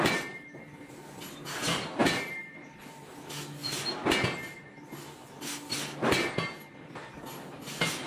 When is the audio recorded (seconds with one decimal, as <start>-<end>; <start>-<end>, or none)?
0.0-2.0; 2.8-8.1